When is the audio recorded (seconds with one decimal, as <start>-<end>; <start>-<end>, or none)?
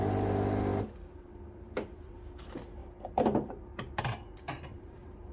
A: 0.7-1.3; 2.8-4.0